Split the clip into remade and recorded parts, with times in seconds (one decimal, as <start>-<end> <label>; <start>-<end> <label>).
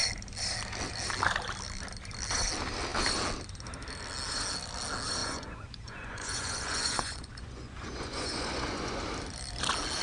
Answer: 0.0-5.2 recorded; 5.2-9.0 remade; 9.0-10.0 recorded